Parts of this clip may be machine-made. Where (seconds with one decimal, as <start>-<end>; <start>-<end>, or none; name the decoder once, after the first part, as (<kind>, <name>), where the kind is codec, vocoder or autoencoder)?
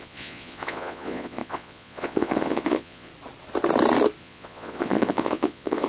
0.0-3.1 (vocoder, Vocos); 4.2-5.9